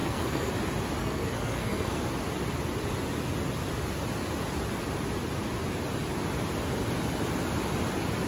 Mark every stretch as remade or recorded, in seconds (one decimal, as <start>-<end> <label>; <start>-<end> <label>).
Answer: 0.0-0.5 remade; 0.5-1.0 recorded; 1.0-2.0 remade; 2.0-8.3 recorded